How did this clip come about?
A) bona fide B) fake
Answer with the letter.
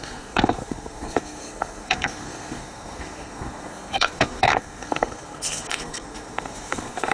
B